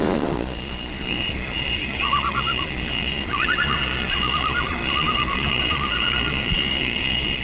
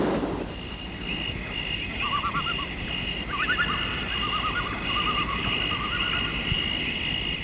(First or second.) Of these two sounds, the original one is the second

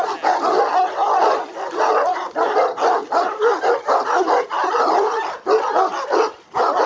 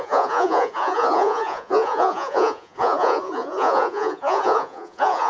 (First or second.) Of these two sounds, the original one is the first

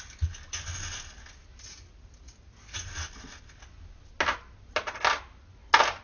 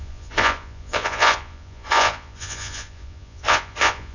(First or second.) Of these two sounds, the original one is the first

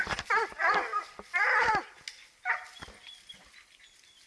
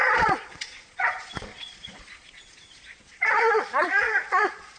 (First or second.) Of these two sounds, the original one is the first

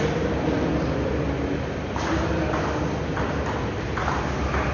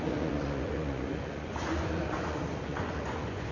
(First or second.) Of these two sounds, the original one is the first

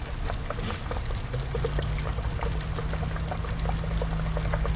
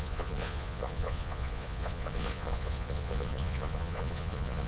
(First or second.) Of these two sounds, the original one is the first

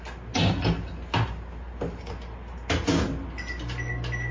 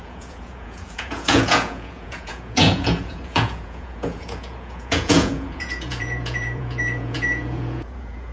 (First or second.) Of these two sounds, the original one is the first